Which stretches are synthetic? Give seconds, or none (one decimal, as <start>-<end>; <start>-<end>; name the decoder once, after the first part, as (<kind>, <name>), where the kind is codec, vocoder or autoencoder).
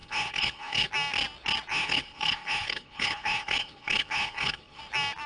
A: 0.0-0.9 (codec, HILCodec); 1.7-4.8